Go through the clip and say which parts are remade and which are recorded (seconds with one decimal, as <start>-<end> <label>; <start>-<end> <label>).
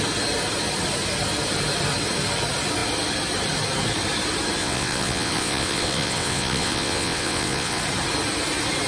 0.0-4.6 recorded; 4.6-7.8 remade; 7.8-8.9 recorded